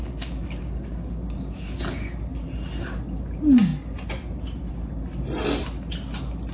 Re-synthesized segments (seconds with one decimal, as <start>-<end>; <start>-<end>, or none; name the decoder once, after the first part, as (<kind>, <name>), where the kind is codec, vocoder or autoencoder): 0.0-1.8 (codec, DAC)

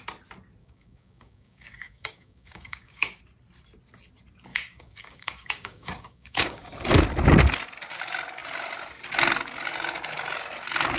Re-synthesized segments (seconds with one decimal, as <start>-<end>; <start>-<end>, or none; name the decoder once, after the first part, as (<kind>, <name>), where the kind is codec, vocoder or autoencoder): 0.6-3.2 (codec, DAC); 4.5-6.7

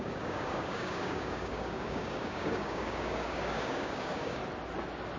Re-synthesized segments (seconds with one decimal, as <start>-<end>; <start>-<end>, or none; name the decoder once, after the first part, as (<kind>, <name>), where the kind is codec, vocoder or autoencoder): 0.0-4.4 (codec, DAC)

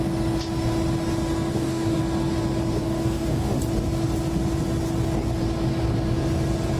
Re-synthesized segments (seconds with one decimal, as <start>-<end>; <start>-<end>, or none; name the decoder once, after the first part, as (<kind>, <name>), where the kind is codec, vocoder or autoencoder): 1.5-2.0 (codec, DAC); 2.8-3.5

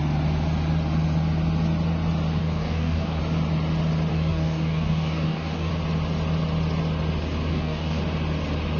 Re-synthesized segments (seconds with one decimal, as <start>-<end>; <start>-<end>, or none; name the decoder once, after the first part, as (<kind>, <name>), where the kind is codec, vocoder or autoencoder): 2.4-3.2 (codec, DAC); 4.1-5.7; 7.5-8.0